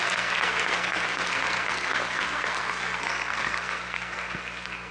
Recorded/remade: remade